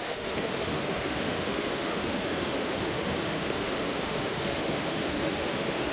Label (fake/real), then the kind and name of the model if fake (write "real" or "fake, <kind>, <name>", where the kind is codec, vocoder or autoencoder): fake, autoencoder, DAC-VAE